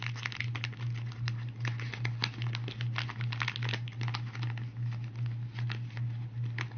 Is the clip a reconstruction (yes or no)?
no